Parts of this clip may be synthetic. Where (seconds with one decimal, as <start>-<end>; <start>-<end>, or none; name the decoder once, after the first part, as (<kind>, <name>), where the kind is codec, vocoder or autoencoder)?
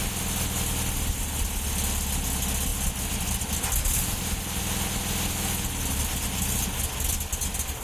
none